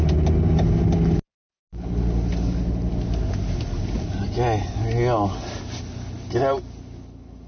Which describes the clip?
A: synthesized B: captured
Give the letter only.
B